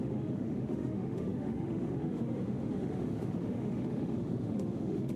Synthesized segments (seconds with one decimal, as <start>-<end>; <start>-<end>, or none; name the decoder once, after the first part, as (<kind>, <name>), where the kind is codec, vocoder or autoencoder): 0.0-5.2 (autoencoder, DAC-VAE)

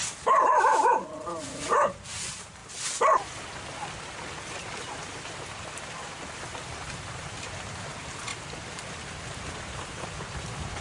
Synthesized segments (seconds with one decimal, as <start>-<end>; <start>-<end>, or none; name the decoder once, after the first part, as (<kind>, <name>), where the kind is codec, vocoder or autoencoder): 0.0-2.6 (vocoder, BigVGAN v2); 4.3-8.3; 8.9-10.8